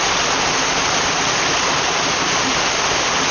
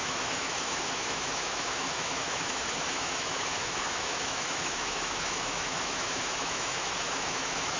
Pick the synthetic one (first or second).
second